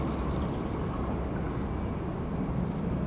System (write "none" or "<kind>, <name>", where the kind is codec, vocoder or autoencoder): none